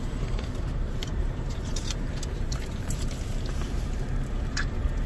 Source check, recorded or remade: remade